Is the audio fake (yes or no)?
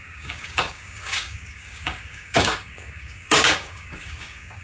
yes